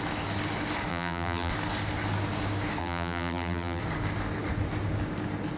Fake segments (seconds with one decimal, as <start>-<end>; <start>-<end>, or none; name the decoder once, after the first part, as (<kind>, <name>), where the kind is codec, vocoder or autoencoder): 0.9-1.5 (vocoder, BigVGAN v2); 2.8-3.8